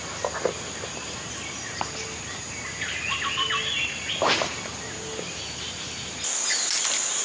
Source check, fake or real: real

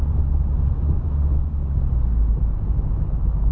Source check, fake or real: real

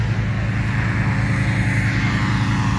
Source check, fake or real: real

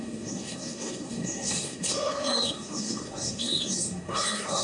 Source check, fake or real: fake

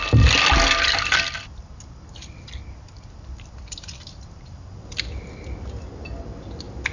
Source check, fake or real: real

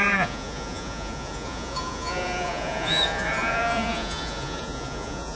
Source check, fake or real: fake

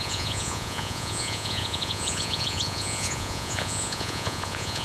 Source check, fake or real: fake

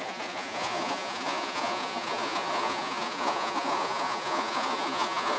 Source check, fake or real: fake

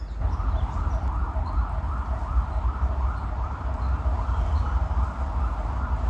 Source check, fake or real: real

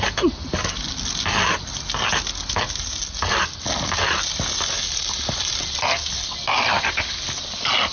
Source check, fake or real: real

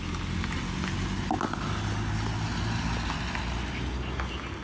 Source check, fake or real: real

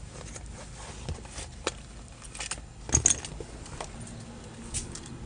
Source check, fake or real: real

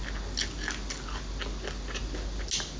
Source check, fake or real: real